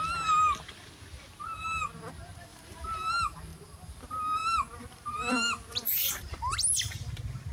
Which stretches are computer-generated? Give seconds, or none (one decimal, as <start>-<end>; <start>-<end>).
2.5-3.1; 4.4-6.9